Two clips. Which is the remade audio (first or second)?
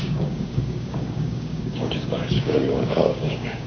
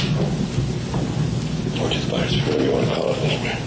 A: first